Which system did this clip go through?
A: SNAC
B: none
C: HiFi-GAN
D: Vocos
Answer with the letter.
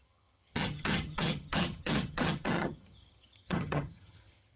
C